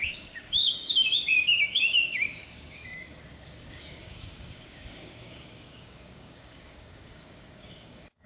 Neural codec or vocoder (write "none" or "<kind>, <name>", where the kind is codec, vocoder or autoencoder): codec, DAC